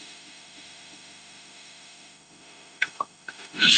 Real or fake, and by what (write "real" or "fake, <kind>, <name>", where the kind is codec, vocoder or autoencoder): fake, autoencoder, DAC-VAE